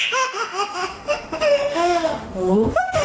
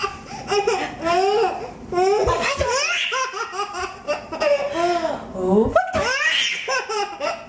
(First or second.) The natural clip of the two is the second